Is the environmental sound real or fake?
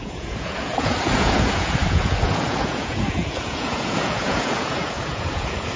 fake